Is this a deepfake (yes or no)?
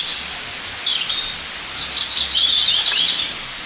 no